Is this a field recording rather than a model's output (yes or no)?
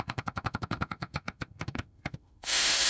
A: no